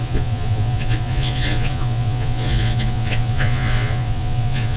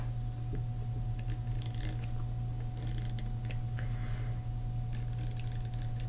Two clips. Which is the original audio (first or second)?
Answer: second